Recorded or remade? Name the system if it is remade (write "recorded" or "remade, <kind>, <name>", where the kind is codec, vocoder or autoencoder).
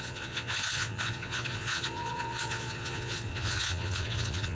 remade, vocoder, Vocos